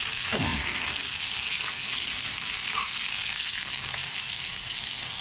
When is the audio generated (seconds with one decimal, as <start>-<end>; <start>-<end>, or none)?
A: 0.0-5.2

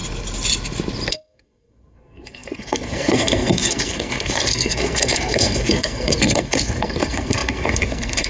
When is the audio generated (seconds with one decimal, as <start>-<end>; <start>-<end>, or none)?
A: 1.1-8.3

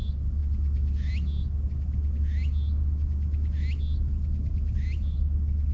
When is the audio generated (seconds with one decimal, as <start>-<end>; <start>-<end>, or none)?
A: none

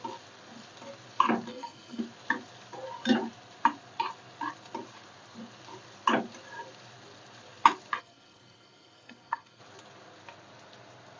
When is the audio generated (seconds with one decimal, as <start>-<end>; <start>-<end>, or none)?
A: 1.5-2.0; 8.0-9.6

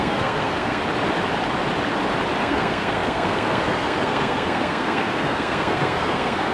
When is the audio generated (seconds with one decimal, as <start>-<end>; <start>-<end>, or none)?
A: 0.0-0.8; 2.4-6.5

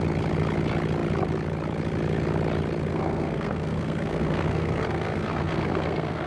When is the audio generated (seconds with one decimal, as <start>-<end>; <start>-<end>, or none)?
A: 2.9-6.3